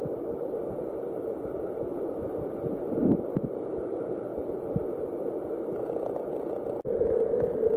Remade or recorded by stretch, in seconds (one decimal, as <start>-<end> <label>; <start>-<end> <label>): 0.0-7.8 recorded